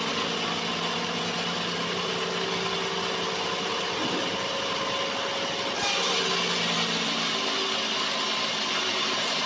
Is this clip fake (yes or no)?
no